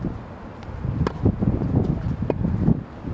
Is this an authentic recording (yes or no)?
yes